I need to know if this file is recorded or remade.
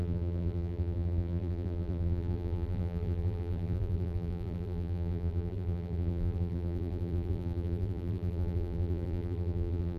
remade